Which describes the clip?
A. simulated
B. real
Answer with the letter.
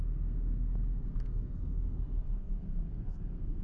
A